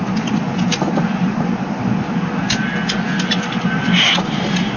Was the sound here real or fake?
real